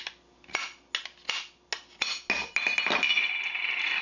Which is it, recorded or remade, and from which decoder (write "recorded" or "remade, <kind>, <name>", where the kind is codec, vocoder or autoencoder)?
recorded